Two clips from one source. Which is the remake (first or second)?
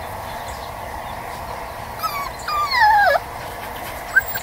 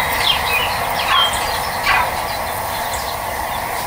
second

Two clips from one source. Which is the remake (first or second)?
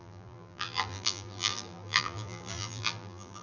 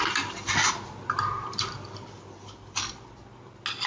first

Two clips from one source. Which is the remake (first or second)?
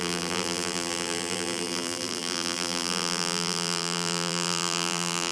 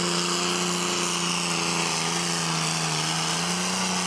first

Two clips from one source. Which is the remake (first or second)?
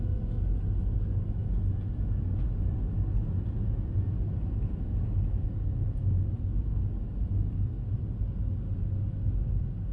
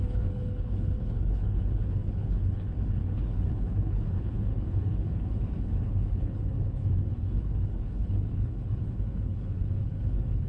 second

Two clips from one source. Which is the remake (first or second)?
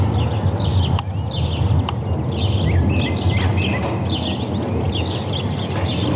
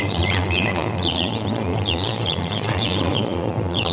second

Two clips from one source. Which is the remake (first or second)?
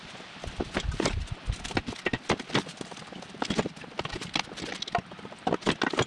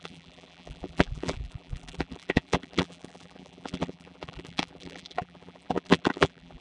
second